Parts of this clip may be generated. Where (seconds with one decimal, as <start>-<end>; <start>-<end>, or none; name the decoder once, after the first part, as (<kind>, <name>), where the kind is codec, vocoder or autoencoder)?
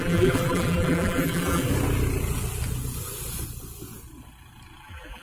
0.0-1.7 (vocoder, BigVGAN v2); 4.8-5.2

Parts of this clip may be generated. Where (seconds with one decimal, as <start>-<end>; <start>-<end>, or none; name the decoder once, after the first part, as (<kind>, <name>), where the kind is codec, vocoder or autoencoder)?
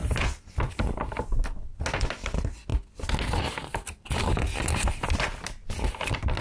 none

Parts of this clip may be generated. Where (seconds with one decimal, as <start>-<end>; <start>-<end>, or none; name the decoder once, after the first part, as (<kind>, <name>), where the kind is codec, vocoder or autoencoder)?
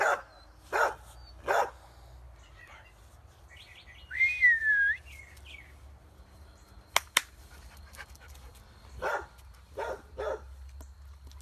none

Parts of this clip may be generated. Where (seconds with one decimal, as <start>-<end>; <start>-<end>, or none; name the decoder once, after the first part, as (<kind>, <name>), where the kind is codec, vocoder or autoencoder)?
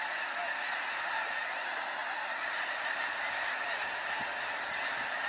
2.0-3.2 (vocoder, BigVGAN v2)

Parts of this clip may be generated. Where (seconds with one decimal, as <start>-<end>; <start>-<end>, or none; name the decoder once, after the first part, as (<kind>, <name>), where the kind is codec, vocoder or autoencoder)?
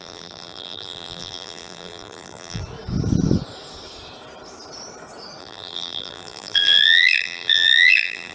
0.0-2.6 (vocoder, BigVGAN v2); 5.4-8.3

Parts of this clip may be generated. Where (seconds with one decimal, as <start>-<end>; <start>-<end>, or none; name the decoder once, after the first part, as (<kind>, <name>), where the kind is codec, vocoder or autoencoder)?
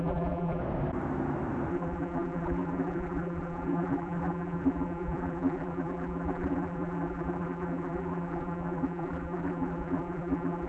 0.0-0.6 (vocoder, BigVGAN v2); 1.7-10.7